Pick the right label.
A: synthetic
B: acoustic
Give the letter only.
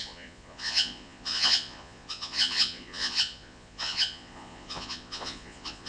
A